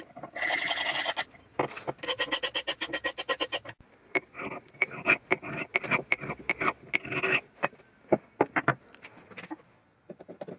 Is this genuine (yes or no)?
yes